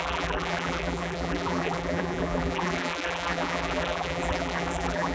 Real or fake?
fake